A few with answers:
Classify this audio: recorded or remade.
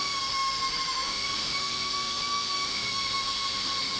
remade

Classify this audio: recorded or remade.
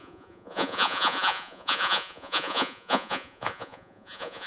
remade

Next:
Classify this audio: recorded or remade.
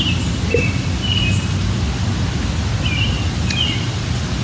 recorded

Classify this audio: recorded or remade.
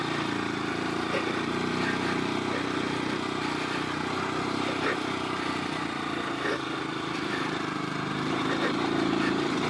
recorded